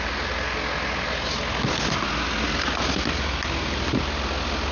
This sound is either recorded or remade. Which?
recorded